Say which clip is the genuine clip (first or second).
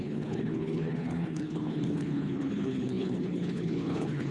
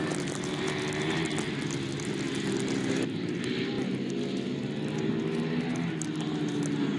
second